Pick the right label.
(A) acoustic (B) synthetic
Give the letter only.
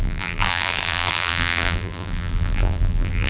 B